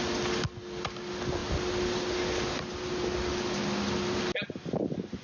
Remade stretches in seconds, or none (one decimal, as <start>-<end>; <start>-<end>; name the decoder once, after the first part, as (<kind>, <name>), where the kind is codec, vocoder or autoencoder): none